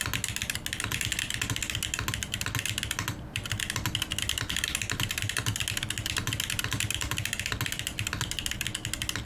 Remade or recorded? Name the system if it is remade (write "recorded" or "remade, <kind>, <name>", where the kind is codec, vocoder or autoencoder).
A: recorded